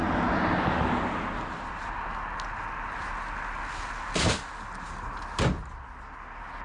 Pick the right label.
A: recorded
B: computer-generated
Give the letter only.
A